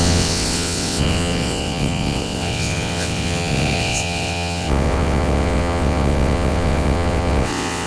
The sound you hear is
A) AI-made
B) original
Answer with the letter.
A